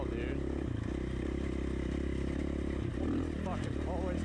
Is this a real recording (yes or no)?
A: yes